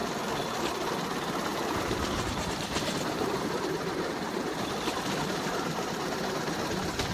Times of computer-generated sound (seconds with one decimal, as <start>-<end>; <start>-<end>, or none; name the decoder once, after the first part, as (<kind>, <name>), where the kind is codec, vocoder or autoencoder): 1.5-4.7 (vocoder, BigVGAN v2); 5.3-7.1